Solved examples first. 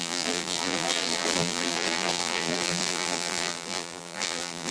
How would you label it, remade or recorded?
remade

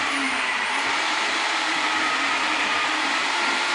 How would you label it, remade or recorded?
remade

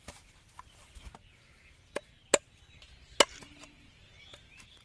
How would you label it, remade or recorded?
recorded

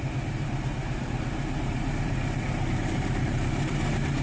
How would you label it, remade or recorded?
remade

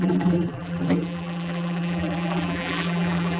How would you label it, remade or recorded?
remade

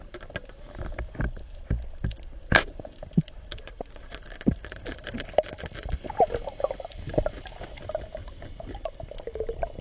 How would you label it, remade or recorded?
recorded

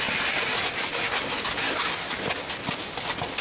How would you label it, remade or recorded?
recorded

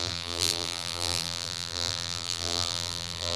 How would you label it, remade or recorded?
remade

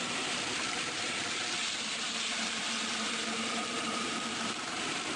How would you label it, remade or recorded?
remade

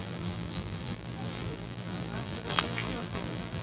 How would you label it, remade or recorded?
remade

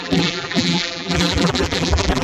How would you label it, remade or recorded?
remade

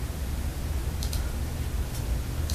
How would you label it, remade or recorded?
recorded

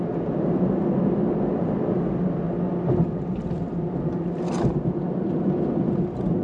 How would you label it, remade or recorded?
recorded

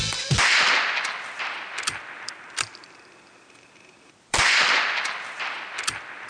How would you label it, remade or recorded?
remade